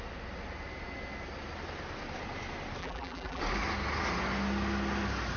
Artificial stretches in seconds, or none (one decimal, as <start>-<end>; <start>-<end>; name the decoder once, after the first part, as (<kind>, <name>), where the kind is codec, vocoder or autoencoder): 2.8-3.4 (vocoder, BigVGAN v2)